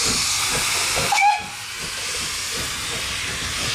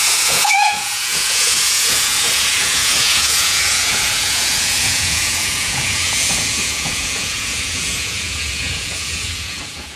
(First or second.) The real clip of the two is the first